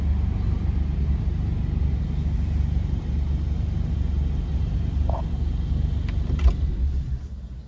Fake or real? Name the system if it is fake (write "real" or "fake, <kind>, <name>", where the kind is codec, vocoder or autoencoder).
real